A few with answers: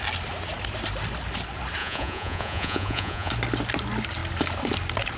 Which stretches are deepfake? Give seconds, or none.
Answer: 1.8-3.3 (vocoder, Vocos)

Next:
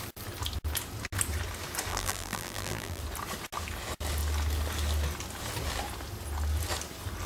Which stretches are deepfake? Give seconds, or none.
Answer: 1.9-3.0 (vocoder, BigVGAN v2)

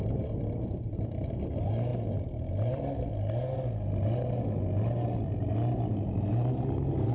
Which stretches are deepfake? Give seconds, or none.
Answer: none